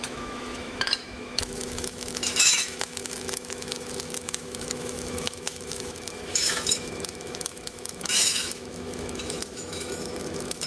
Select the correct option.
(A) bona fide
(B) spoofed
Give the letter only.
B